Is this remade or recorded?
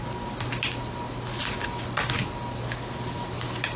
recorded